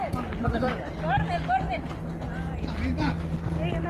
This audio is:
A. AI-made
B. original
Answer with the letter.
B